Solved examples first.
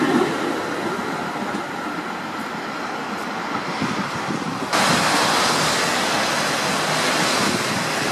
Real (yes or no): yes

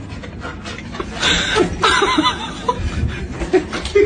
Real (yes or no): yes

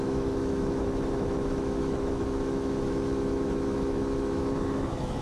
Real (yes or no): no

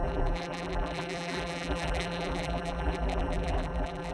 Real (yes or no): no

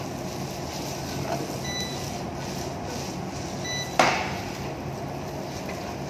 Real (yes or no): yes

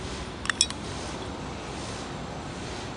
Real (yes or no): yes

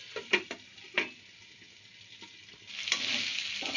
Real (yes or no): yes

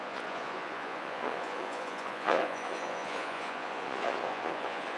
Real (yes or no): no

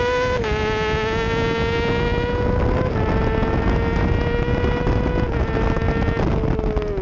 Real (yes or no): yes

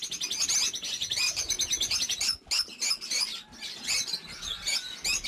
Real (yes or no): yes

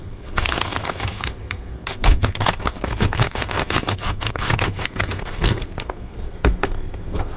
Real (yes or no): no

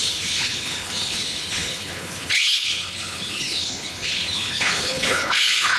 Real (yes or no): no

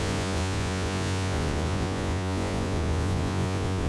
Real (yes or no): no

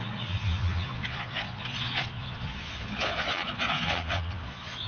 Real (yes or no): no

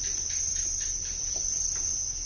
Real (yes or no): yes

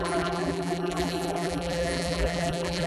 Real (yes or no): no